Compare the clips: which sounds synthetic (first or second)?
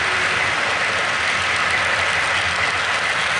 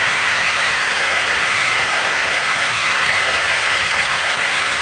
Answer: second